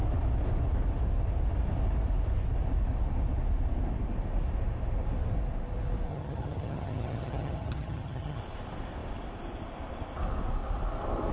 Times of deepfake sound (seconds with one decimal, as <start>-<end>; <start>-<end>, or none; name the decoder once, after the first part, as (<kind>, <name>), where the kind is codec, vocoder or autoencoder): 6.1-8.4 (vocoder, HiFi-GAN)